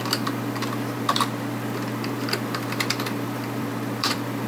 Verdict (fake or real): fake